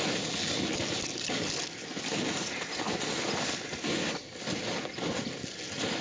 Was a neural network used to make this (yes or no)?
no